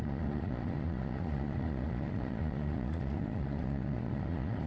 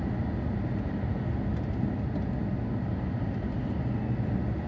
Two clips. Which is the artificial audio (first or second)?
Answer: first